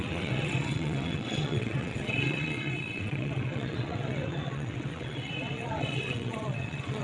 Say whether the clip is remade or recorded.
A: remade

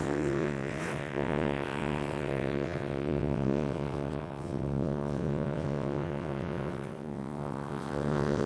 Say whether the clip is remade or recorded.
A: remade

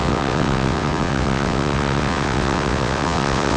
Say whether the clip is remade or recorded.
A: remade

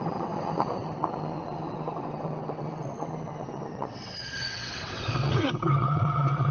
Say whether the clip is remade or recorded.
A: remade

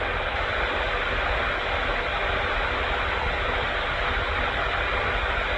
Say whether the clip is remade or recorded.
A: recorded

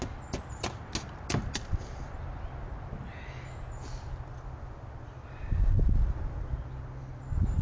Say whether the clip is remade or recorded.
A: recorded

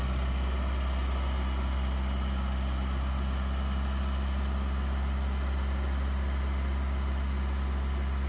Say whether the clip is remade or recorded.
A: recorded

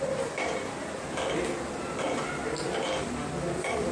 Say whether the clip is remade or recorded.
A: recorded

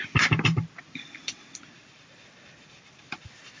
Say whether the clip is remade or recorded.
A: recorded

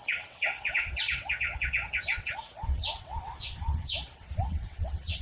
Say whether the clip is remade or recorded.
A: remade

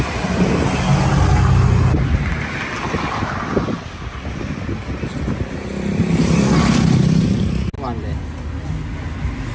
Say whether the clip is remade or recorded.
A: recorded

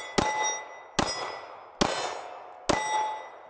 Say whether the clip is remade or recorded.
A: recorded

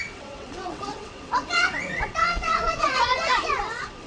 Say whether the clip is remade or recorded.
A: remade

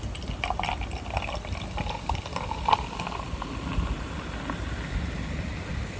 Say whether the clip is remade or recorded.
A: recorded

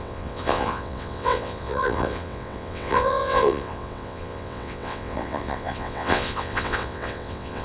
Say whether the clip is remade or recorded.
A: remade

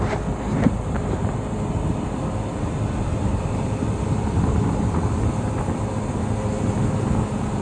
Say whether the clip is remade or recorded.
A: recorded